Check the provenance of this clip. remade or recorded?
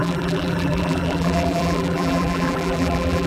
remade